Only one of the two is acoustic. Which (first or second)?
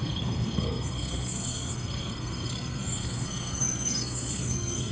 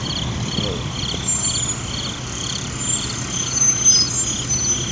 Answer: second